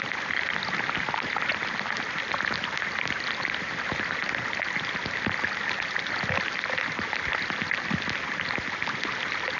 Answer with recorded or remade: recorded